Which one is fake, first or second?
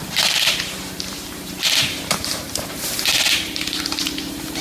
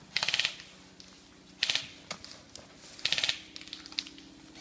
first